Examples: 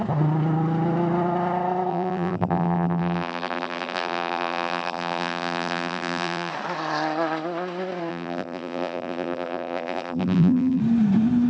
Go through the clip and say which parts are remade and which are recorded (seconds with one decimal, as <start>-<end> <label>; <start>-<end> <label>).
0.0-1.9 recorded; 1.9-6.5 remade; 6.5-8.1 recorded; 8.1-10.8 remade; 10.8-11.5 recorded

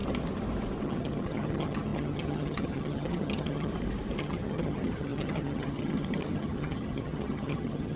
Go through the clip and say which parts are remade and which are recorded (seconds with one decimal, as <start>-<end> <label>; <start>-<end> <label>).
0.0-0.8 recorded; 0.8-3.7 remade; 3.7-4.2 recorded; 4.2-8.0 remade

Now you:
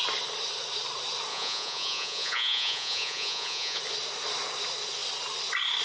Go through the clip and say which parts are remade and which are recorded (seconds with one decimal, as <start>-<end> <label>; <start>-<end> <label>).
0.0-1.3 recorded; 1.3-3.8 remade; 3.8-5.8 recorded

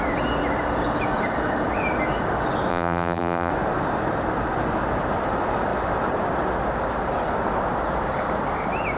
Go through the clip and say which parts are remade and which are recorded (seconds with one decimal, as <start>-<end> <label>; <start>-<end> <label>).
0.0-2.7 recorded; 2.7-3.5 remade; 3.5-9.0 recorded

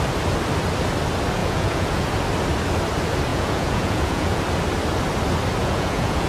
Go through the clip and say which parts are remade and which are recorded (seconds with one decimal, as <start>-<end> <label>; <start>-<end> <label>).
0.0-1.4 recorded; 1.4-2.1 remade; 2.1-3.3 recorded; 3.3-4.4 remade; 4.4-5.6 recorded; 5.6-6.3 remade

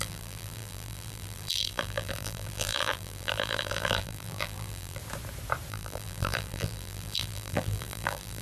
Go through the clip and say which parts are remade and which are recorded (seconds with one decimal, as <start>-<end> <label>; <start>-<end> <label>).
0.0-5.0 remade; 5.0-5.7 recorded; 5.7-8.4 remade

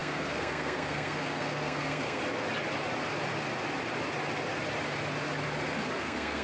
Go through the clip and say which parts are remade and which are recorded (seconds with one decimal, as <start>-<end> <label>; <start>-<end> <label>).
0.0-2.2 remade; 2.2-6.0 recorded; 6.0-6.4 remade